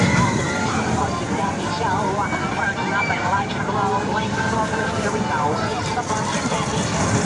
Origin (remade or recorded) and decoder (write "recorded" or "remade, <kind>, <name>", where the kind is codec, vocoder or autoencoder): recorded